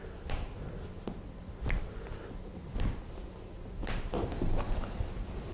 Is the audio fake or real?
real